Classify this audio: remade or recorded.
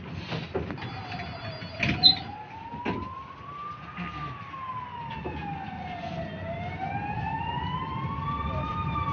recorded